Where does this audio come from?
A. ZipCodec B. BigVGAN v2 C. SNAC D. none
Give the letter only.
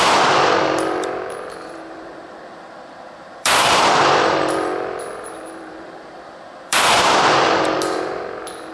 B